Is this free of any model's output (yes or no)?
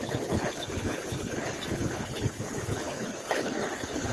no